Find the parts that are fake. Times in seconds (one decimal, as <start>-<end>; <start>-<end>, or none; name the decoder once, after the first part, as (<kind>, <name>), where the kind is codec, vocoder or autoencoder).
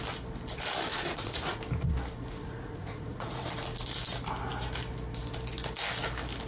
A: 0.9-1.6 (vocoder, Vocos); 2.4-3.4